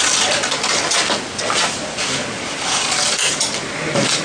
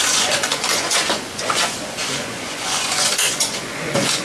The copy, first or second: second